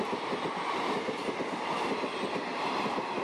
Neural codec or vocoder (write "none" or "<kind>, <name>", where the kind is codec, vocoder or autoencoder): none